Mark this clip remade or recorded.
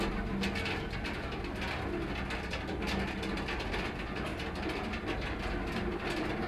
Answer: recorded